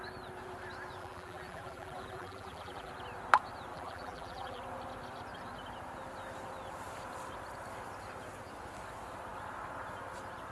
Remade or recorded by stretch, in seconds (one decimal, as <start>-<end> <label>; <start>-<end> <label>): 0.0-1.0 recorded; 1.0-2.9 remade; 2.9-3.7 recorded; 3.7-4.6 remade; 4.6-10.5 recorded